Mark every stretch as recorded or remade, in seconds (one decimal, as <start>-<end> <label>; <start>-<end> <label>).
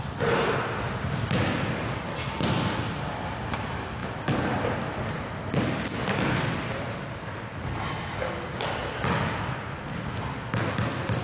0.0-11.2 recorded